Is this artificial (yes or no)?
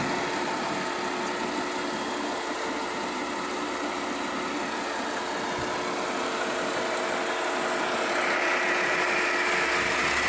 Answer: no